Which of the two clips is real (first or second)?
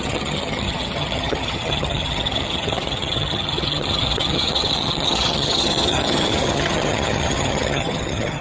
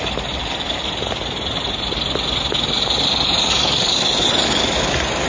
second